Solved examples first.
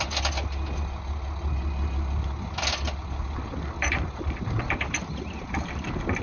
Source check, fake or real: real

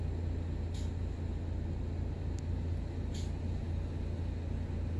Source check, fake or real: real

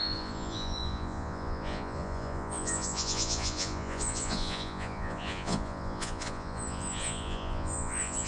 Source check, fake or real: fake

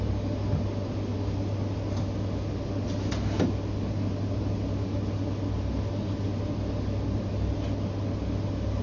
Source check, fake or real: real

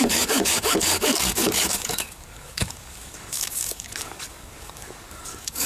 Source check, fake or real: fake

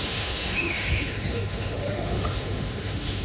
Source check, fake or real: fake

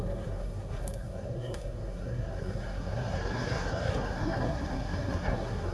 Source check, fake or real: fake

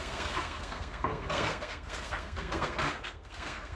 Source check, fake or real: fake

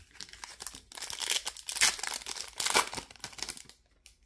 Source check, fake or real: real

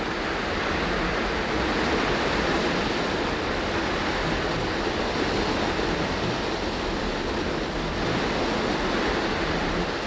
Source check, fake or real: real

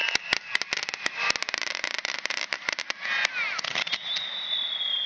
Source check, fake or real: real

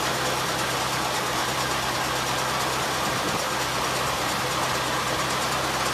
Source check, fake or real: real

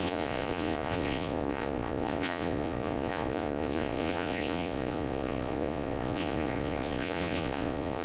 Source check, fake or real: fake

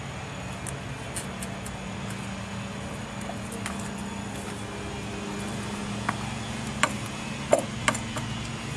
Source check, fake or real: real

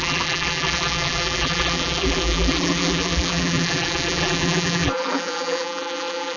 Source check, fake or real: fake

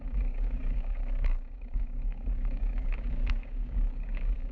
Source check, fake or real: fake